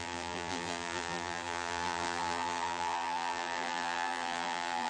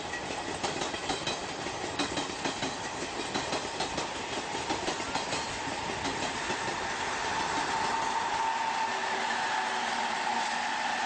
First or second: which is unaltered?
second